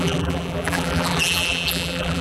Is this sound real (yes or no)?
no